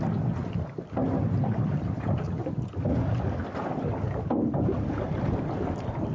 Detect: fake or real real